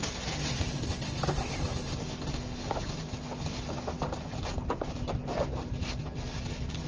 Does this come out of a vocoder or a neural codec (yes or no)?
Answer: no